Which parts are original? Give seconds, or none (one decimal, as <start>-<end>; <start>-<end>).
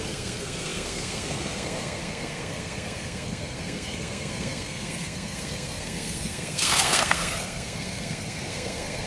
none